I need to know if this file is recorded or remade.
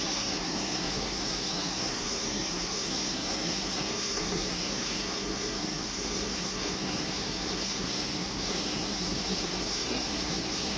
remade